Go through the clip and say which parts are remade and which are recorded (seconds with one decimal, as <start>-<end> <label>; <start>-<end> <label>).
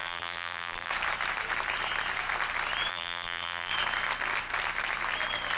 0.0-0.9 remade; 0.9-2.9 recorded; 2.9-3.7 remade; 3.7-5.6 recorded